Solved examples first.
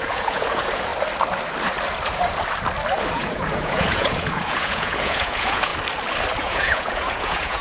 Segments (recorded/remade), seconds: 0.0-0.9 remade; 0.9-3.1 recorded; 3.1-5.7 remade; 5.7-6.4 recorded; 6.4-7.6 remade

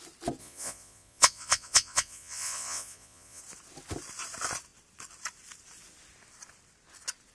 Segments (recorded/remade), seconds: 0.0-0.4 recorded; 0.4-3.4 remade; 3.4-7.3 recorded

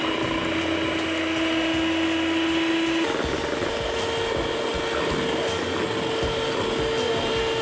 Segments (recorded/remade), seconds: 0.0-7.6 recorded

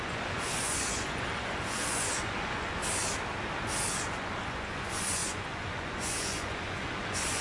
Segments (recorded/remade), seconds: 0.0-2.8 remade; 2.8-3.9 recorded; 3.9-7.4 remade

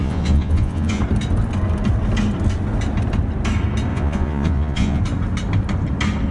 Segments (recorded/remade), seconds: 0.0-1.0 remade; 1.0-3.9 recorded; 3.9-5.0 remade; 5.0-6.3 recorded

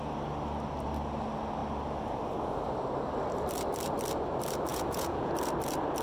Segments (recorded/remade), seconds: 0.0-4.7 recorded; 4.7-5.3 remade; 5.3-6.0 recorded

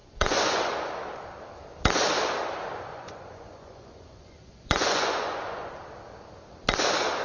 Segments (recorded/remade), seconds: 0.0-0.9 remade; 0.9-2.9 recorded; 2.9-5.7 remade; 5.7-7.2 recorded

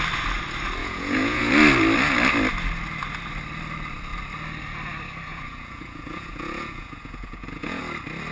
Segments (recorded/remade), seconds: 0.0-0.8 recorded; 0.8-1.5 remade; 1.5-5.3 recorded; 5.3-7.8 remade; 7.8-8.3 recorded